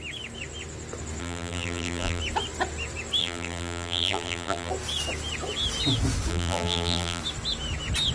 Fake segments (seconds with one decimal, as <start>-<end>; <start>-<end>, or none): 1.2-2.2; 3.2-4.7; 6.3-7.2